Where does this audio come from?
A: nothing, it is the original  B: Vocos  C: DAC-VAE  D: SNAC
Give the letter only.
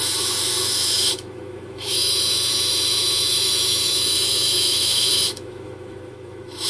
C